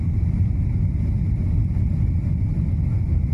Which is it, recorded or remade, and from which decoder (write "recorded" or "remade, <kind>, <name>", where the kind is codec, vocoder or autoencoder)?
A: recorded